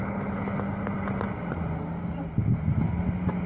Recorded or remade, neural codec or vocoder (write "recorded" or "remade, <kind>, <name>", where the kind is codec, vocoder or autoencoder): recorded